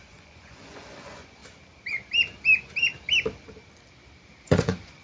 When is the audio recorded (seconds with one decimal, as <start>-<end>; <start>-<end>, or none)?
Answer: 1.4-4.4